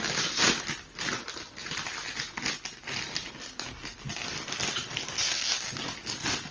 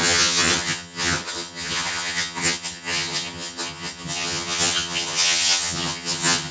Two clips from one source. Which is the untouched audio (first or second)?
first